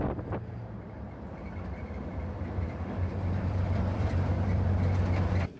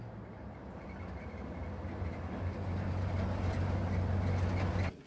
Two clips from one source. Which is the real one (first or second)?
second